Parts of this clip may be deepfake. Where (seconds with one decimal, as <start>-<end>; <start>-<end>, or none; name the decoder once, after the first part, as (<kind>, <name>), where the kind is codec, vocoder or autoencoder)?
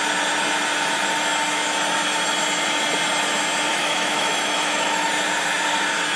3.7-5.1 (autoencoder, DAC-VAE)